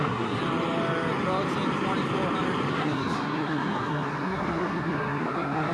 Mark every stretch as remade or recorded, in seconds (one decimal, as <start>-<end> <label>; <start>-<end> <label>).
0.0-0.4 remade; 0.4-2.7 recorded; 2.7-5.7 remade